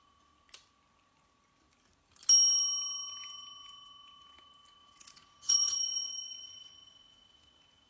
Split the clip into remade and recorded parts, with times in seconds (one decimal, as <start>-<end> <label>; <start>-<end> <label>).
0.0-4.8 recorded; 4.8-7.9 remade